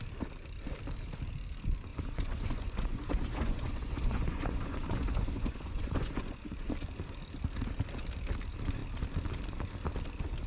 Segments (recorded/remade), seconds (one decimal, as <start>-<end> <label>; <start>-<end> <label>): 0.0-1.9 recorded; 1.9-6.7 remade; 6.7-10.5 recorded